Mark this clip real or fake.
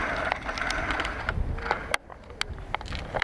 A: real